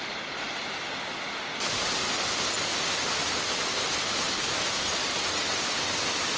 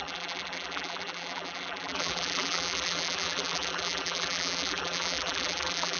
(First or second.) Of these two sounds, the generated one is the second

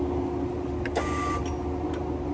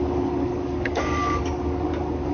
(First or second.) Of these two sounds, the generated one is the second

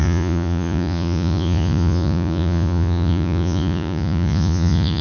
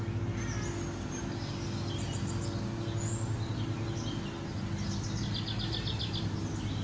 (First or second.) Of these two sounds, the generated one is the first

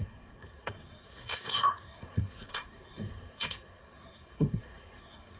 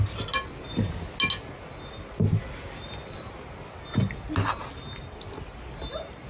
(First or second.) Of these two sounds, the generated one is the first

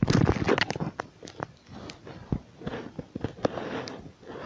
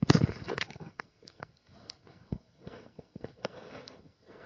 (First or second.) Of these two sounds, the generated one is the second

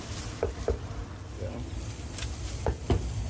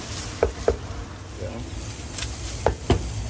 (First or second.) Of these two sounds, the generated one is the first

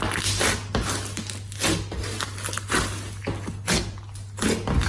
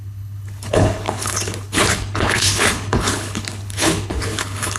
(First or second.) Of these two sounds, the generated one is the second